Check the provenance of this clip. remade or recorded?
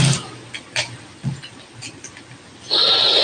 recorded